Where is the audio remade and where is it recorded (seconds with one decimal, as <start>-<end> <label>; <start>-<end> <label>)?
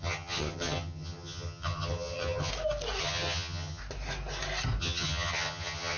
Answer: 0.0-2.5 remade; 2.5-3.0 recorded; 3.0-3.8 remade; 3.8-4.8 recorded; 4.8-6.0 remade